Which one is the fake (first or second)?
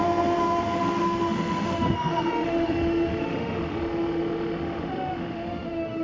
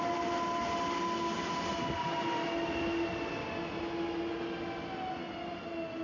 first